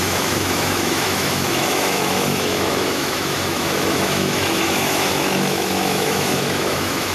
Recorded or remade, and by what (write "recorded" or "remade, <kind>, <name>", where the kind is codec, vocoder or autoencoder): remade, autoencoder, DAC-VAE